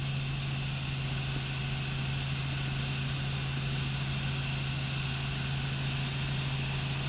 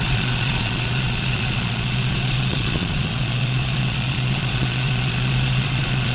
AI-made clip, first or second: second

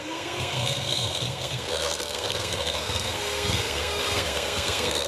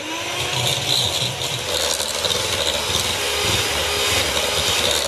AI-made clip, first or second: first